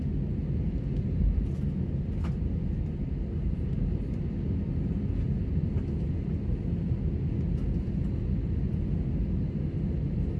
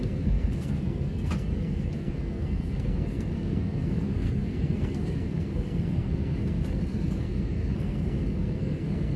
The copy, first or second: second